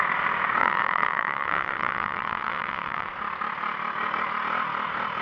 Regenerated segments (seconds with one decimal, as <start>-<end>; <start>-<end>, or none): 0.6-3.1